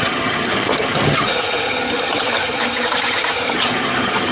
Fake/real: fake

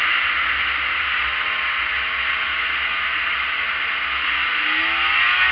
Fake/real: real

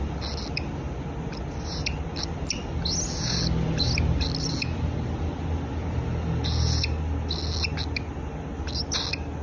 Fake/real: real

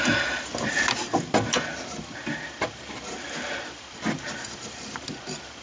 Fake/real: real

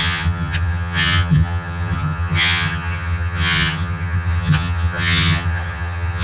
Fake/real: fake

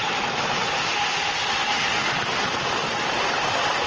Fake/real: real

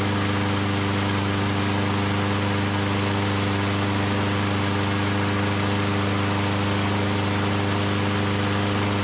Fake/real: real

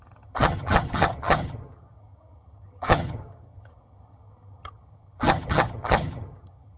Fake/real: fake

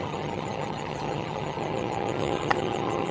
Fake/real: fake